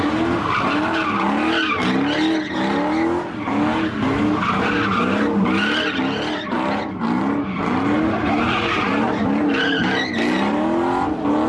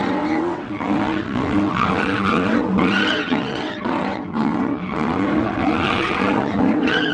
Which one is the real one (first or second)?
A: first